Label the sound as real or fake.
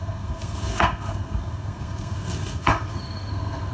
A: fake